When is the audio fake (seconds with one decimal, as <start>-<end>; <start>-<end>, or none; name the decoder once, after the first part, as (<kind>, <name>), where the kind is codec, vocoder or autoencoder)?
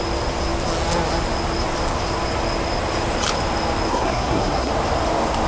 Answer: 3.9-4.7 (codec, SNAC)